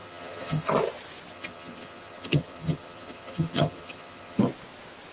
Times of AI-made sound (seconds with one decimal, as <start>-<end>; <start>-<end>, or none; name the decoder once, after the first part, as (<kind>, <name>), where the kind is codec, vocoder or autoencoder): 0.0-0.7 (vocoder, HiFi-GAN); 1.3-4.4